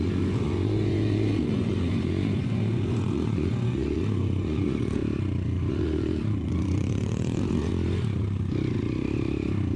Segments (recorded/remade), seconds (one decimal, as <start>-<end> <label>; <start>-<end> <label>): 0.0-5.0 remade; 5.0-5.7 recorded; 5.7-7.7 remade; 7.7-9.8 recorded